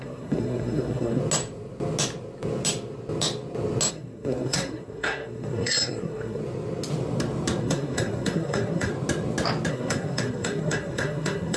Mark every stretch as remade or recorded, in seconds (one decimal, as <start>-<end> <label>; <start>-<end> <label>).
0.0-1.2 remade; 1.2-3.9 recorded; 3.9-6.4 remade; 6.4-7.6 recorded; 7.6-8.9 remade; 8.9-9.7 recorded; 9.7-11.6 remade